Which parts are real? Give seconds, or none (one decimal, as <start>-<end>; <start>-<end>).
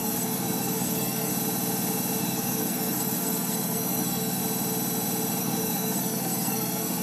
1.3-2.2; 4.4-5.4